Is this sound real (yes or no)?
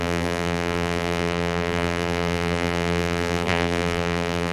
no